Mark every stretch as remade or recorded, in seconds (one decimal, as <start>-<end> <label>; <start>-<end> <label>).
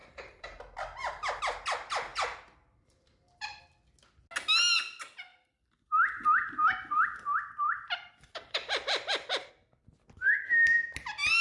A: 0.0-1.4 remade; 1.4-2.1 recorded; 2.1-3.6 remade; 3.6-5.3 recorded; 5.3-9.5 remade; 9.5-11.4 recorded